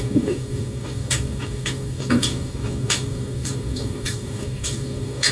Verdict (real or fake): fake